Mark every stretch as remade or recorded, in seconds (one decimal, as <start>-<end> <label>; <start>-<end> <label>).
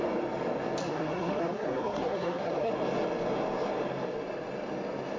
0.0-0.8 recorded; 0.8-2.7 remade; 2.7-5.2 recorded